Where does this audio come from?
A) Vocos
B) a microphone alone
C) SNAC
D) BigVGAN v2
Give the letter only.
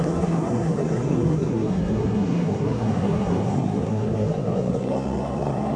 C